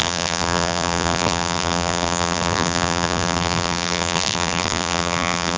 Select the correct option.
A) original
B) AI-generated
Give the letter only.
B